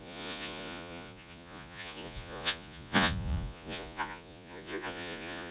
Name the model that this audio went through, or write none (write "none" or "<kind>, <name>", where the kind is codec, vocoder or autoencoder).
vocoder, Vocos